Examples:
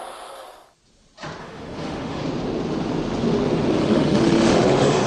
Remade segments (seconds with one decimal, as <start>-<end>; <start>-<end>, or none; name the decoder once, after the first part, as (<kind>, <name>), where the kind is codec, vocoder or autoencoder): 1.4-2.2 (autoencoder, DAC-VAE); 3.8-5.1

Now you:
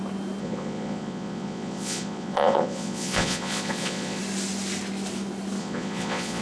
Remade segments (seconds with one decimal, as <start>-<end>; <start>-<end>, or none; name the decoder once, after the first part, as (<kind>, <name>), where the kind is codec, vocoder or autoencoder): 0.4-4.2 (vocoder, Vocos); 5.6-6.4

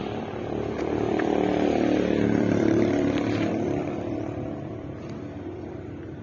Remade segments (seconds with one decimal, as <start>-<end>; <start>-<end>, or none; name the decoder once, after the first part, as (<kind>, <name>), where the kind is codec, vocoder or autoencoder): 0.0-6.2 (vocoder, BigVGAN v2)